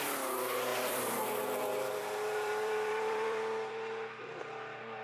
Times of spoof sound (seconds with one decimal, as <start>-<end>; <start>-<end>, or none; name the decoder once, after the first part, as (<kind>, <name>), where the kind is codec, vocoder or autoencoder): 0.7-3.7 (vocoder, BigVGAN v2)